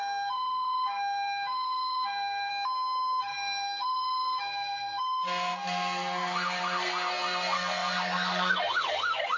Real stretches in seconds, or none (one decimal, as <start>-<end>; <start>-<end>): 2.5-3.2